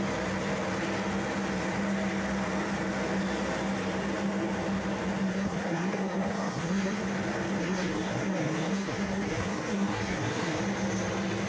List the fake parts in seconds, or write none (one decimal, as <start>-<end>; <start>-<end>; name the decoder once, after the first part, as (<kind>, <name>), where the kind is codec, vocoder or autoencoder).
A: 5.3-7.0 (codec, SNAC); 7.6-10.6